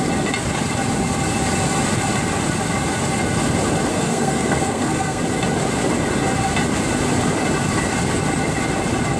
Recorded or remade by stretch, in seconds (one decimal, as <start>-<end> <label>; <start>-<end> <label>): 0.0-3.9 recorded; 3.9-5.2 remade; 5.2-9.2 recorded